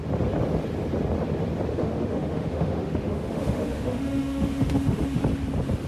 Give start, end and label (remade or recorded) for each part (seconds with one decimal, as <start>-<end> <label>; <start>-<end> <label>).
0.0-1.7 recorded; 1.7-5.2 remade; 5.2-5.9 recorded

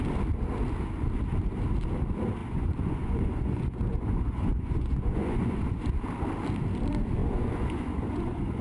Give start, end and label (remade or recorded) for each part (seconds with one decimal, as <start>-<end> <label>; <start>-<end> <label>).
0.0-2.4 recorded; 2.4-5.9 remade; 5.9-7.2 recorded; 7.2-8.6 remade